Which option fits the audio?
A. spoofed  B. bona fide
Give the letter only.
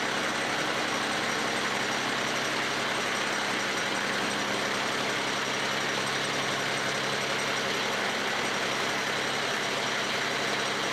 B